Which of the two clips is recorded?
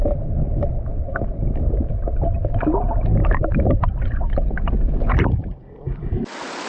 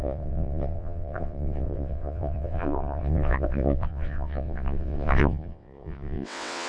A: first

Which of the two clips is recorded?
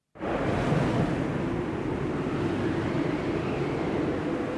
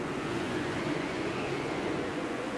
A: first